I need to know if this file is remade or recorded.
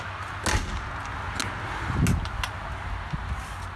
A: recorded